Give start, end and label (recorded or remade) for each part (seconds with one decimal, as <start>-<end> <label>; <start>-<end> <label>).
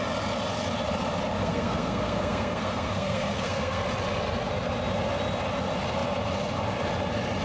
0.0-1.4 recorded; 1.4-3.8 remade; 3.8-7.4 recorded